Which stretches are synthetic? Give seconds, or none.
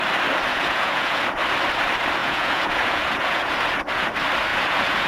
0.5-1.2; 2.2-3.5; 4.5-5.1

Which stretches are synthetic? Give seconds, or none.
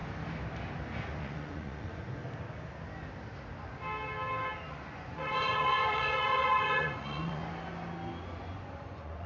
1.2-2.2; 4.7-7.4; 8.4-9.3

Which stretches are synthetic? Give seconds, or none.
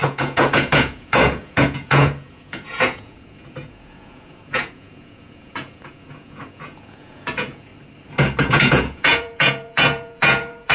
0.0-7.7; 8.4-10.7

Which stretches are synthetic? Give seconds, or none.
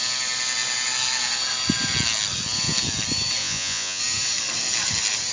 3.4-4.0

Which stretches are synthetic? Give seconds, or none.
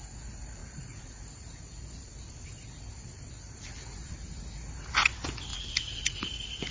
5.5-6.3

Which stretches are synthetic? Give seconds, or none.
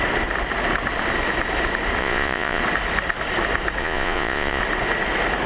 2.0-2.6; 3.8-4.6